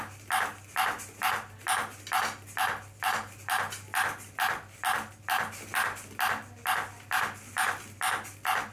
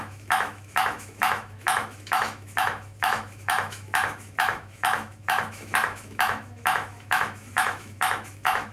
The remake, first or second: second